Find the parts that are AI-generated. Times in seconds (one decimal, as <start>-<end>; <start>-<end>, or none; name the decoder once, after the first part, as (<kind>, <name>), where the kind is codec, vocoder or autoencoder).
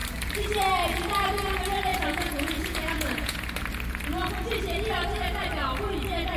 1.9-3.4 (vocoder, Vocos)